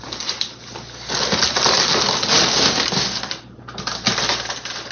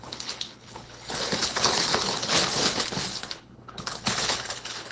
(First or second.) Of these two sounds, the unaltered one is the first